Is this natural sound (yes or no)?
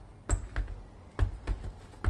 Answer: yes